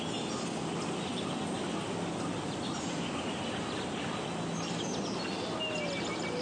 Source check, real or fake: real